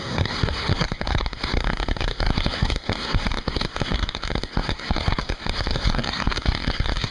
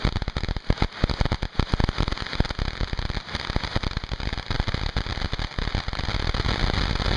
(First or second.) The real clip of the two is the second